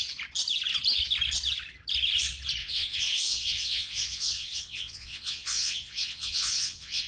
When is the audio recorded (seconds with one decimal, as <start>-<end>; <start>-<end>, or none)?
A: 0.0-2.6